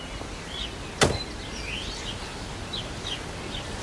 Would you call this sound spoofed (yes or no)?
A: no